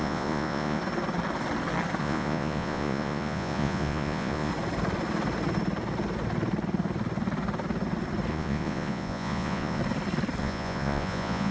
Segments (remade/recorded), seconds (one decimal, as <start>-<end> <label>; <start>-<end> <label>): 0.0-0.8 remade; 0.8-2.0 recorded; 2.0-4.5 remade; 4.5-8.3 recorded; 8.3-9.8 remade; 9.8-10.4 recorded; 10.4-11.5 remade